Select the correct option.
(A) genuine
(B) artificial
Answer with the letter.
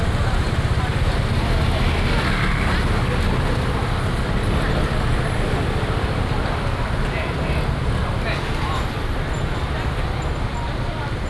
A